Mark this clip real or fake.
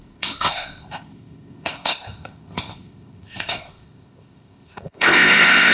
fake